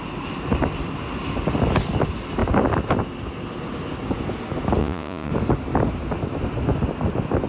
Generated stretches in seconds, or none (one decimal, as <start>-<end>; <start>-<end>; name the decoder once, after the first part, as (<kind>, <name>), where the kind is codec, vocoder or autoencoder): 4.8-5.3 (vocoder, Vocos)